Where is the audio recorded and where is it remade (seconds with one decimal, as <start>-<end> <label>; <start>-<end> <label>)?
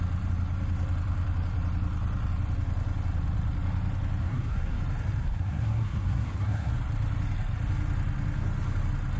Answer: 0.0-4.2 recorded; 4.2-4.8 remade; 4.8-5.2 recorded; 5.2-6.7 remade; 6.7-9.2 recorded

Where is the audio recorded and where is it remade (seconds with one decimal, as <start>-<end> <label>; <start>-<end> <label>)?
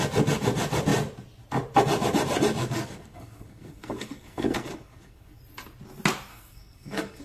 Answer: 0.0-2.6 recorded; 2.6-5.4 remade; 5.4-6.3 recorded; 6.3-7.2 remade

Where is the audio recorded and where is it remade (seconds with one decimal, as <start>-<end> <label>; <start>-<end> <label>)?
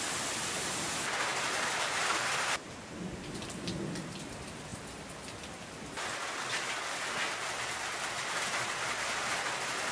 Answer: 0.0-9.9 recorded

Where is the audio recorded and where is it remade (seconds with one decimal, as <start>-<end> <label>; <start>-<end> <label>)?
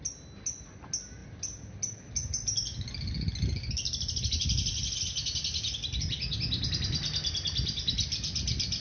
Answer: 0.0-8.8 recorded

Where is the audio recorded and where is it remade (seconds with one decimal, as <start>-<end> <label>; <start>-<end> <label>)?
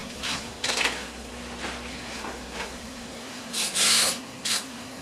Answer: 0.0-1.3 remade; 1.3-1.9 recorded; 1.9-5.0 remade